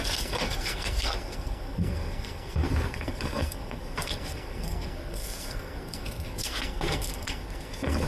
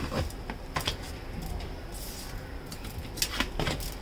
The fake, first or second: first